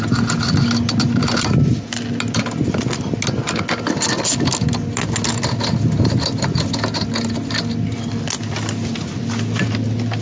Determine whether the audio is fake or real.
real